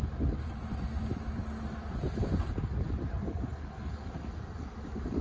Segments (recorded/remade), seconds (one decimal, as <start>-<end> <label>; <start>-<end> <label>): 0.0-5.2 recorded